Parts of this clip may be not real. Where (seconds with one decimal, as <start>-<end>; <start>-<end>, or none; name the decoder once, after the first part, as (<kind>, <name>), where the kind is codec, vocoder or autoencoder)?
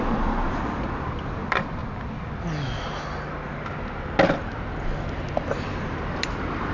0.0-1.8 (vocoder, BigVGAN v2); 5.3-6.7